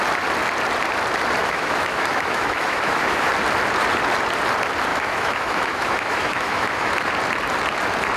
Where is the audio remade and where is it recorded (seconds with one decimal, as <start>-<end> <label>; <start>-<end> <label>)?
0.0-1.4 recorded; 1.4-3.3 remade; 3.3-4.9 recorded; 4.9-6.9 remade; 6.9-8.2 recorded